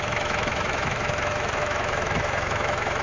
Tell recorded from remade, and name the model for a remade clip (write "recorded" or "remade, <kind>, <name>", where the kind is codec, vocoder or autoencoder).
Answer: remade, autoencoder, DAC-VAE